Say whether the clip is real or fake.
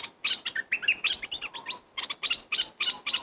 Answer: real